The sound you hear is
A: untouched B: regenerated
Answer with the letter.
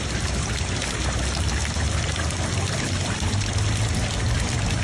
B